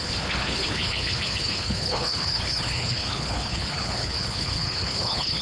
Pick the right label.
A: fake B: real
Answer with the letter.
A